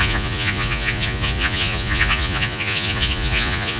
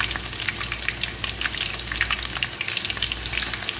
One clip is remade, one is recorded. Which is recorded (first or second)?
second